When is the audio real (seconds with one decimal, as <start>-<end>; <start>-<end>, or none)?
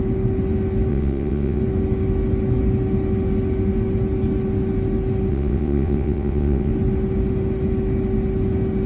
0.0-0.9; 1.6-5.3; 6.7-8.9